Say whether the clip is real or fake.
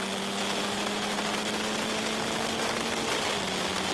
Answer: real